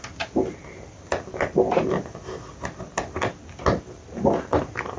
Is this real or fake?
real